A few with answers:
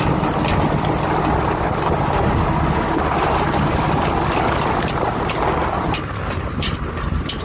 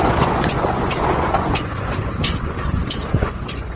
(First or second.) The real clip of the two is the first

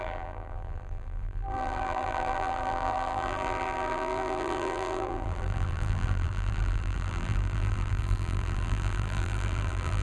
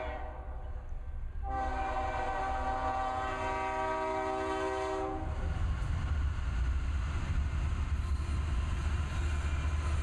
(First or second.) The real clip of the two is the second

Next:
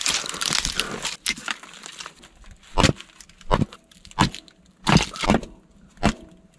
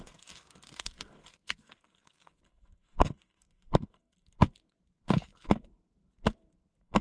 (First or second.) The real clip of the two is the first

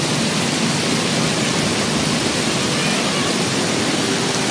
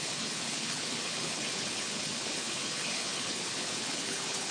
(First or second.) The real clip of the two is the first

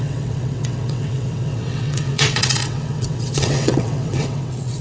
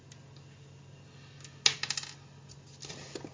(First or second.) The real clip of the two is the second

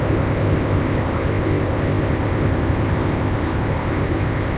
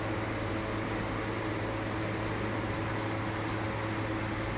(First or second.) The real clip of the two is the second